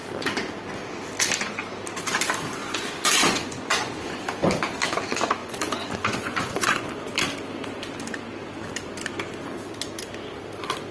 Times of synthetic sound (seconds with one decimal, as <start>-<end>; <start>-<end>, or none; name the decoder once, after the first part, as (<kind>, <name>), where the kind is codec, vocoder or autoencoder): 2.6-4.2 (vocoder, Vocos); 5.4-6.9